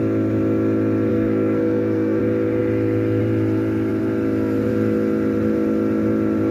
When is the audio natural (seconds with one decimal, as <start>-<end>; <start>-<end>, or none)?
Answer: 0.0-1.1; 2.2-6.5